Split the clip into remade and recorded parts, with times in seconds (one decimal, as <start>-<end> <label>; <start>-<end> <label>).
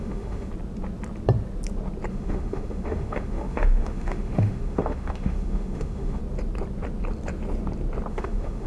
0.0-0.5 remade; 0.5-2.1 recorded; 2.1-6.2 remade; 6.2-8.1 recorded; 8.1-8.7 remade